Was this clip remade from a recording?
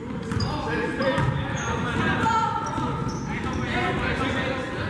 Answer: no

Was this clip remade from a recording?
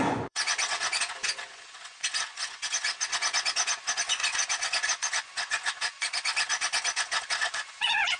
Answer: yes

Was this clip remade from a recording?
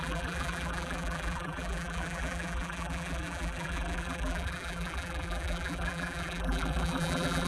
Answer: yes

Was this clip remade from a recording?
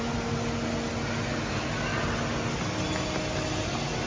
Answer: no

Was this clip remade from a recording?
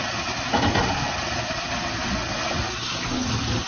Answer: no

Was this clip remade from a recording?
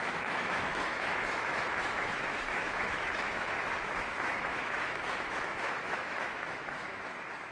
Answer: yes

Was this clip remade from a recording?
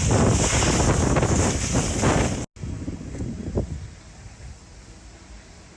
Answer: no